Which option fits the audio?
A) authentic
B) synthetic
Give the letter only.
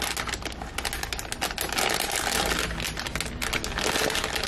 A